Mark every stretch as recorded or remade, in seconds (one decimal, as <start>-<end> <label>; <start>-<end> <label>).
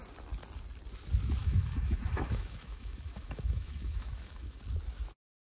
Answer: 0.0-1.4 recorded; 1.4-4.6 remade; 4.6-5.4 recorded